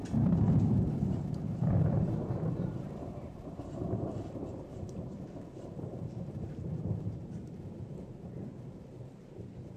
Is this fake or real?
fake